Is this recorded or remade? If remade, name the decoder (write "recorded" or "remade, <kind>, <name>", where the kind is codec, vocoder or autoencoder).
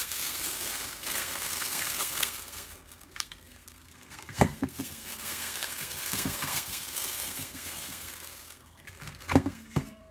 remade, codec, SNAC